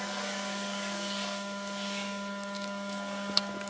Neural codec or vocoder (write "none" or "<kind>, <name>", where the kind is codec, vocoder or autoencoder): codec, DAC